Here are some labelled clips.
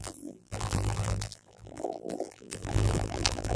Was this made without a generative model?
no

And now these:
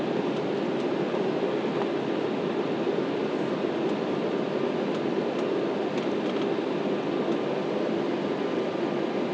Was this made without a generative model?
yes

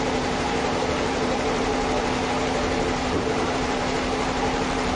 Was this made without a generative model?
no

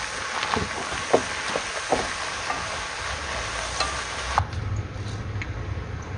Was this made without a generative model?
yes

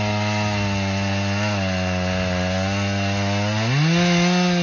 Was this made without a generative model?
yes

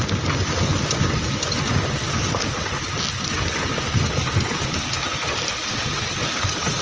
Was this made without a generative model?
yes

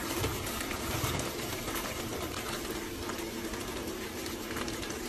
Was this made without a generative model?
yes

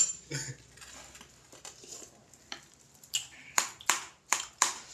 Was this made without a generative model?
no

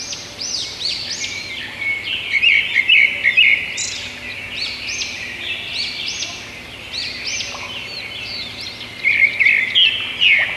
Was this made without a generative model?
yes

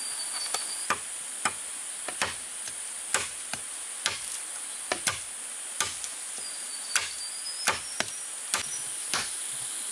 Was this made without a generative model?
yes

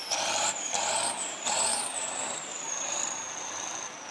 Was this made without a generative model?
no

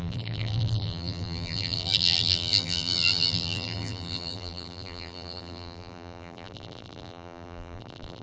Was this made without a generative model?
no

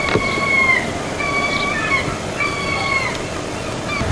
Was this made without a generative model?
yes